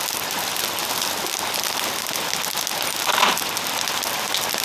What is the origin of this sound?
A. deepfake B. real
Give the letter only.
B